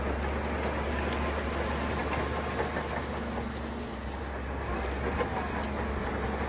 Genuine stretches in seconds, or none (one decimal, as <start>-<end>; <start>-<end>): 0.0-6.5